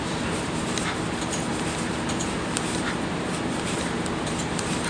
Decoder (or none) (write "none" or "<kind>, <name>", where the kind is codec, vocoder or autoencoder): vocoder, BigVGAN v2